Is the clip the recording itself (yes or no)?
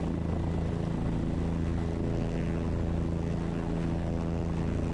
yes